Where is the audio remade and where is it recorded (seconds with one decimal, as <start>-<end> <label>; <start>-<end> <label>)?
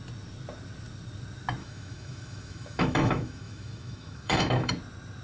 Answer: 0.0-1.6 recorded; 1.6-4.7 remade; 4.7-5.2 recorded